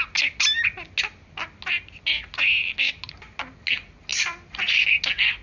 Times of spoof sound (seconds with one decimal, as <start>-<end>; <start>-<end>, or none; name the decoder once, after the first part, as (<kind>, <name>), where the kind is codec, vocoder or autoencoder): none